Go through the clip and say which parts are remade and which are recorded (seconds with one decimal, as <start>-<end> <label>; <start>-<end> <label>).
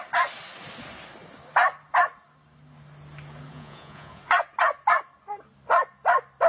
0.0-3.5 recorded; 3.5-4.2 remade; 4.2-6.5 recorded